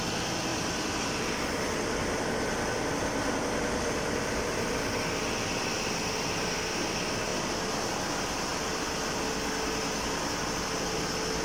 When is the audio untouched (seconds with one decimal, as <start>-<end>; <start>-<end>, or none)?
0.0-0.5; 4.7-8.5; 9.2-11.4